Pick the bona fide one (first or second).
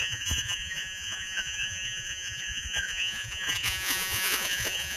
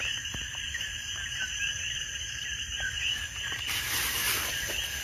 second